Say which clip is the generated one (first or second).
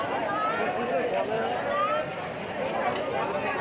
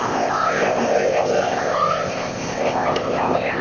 second